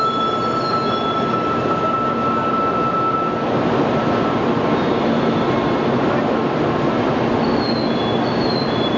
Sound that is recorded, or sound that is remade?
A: recorded